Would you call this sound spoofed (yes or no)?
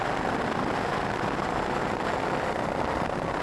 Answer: no